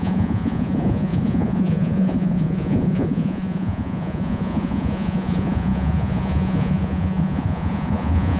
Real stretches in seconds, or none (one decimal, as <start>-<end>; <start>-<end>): none